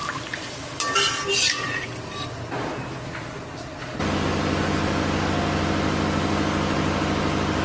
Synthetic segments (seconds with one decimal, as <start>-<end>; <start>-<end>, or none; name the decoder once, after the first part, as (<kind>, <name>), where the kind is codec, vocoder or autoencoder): none